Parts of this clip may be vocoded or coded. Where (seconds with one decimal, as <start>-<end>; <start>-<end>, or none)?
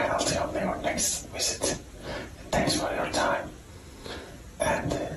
3.7-4.3